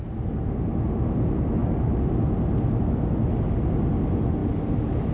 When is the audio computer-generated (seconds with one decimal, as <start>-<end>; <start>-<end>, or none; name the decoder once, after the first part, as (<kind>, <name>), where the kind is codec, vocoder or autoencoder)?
none